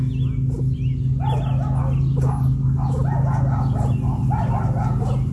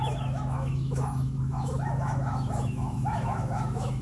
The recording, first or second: first